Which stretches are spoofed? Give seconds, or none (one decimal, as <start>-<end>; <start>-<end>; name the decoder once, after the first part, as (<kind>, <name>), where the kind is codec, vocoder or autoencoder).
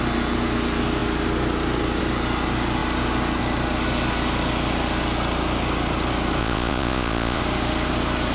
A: 6.4-7.4 (vocoder, Vocos)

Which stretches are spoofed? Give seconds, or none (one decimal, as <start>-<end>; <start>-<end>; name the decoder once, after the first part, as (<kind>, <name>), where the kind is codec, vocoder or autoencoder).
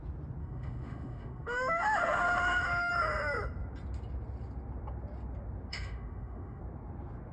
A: 0.4-2.9 (autoencoder, DAC-VAE); 5.7-6.6